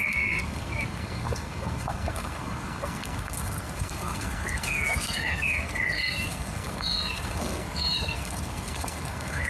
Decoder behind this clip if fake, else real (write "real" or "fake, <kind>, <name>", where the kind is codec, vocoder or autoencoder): fake, codec, SNAC